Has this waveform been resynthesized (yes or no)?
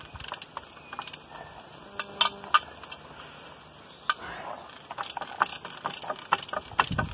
no